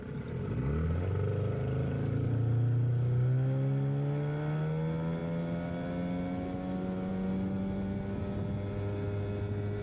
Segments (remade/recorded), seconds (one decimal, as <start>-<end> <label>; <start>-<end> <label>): 0.0-1.8 recorded; 1.8-2.3 remade; 2.3-9.8 recorded